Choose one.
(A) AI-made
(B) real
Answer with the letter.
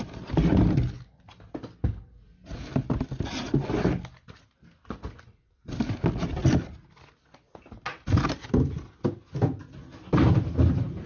B